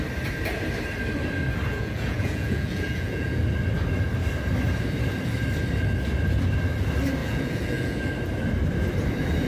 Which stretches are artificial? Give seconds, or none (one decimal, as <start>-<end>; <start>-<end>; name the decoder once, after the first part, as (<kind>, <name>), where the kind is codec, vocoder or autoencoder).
1.7-3.4 (vocoder, Vocos); 7.2-8.1